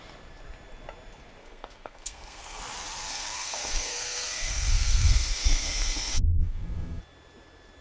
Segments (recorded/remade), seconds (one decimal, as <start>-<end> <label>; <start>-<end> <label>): 0.0-1.4 recorded; 1.4-2.6 remade; 2.6-3.1 recorded; 3.1-7.0 remade; 7.0-7.8 recorded